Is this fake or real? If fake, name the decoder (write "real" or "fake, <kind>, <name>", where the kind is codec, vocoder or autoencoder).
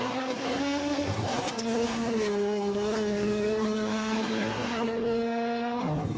fake, codec, SNAC